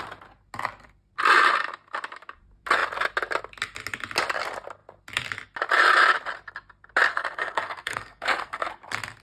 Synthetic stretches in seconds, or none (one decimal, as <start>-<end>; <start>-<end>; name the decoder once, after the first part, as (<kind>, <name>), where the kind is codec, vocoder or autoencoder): 7.1-8.7 (codec, SNAC)